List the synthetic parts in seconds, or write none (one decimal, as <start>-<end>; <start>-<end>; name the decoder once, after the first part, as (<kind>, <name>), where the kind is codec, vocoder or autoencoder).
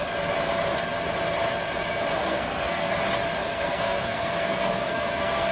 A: 2.1-2.9 (codec, SNAC); 3.4-5.5